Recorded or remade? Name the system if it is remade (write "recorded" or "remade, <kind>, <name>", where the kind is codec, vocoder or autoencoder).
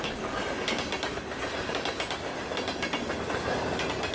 recorded